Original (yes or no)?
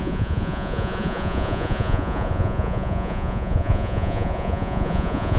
no